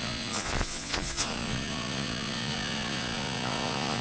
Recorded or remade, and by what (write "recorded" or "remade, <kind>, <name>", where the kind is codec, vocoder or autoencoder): remade, vocoder, Vocos